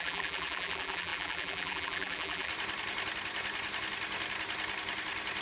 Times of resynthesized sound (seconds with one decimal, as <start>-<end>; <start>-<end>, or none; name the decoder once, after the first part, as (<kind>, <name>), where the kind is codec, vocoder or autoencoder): 0.0-2.5 (vocoder, BigVGAN v2)